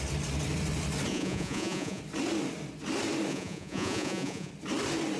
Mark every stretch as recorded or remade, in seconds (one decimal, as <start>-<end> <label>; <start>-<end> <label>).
0.0-1.1 recorded; 1.1-2.0 remade; 2.0-3.3 recorded; 3.3-4.5 remade; 4.5-5.2 recorded